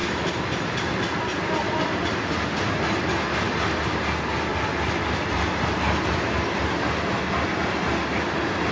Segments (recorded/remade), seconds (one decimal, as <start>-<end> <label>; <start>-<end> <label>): 0.0-3.8 remade; 3.8-4.5 recorded; 4.5-6.3 remade; 6.3-8.7 recorded